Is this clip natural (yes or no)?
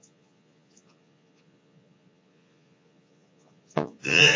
no